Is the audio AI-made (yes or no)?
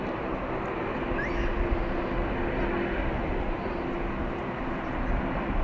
no